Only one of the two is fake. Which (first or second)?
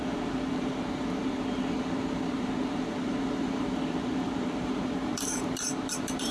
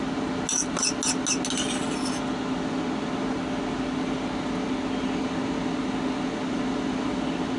first